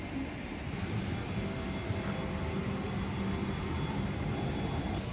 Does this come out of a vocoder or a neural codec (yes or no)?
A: no